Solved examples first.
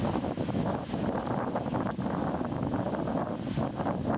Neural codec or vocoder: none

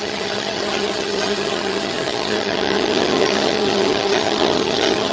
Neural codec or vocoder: vocoder, HiFi-GAN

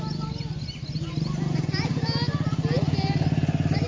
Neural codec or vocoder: none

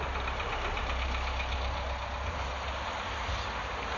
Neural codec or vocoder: none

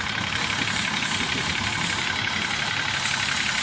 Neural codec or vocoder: none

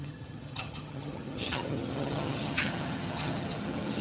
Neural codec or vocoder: vocoder, HiFi-GAN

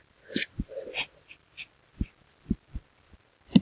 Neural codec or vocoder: none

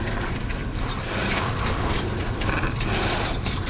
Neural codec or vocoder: none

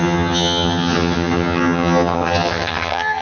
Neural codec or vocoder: vocoder, HiFi-GAN